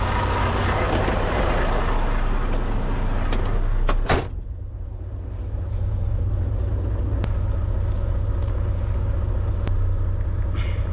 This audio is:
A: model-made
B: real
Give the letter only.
B